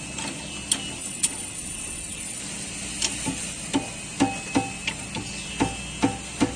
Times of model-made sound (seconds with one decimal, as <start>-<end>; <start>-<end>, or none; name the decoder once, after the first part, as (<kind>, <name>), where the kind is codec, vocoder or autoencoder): 1.0-2.4 (vocoder, WaveNeXt)